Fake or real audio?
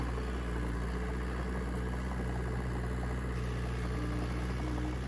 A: real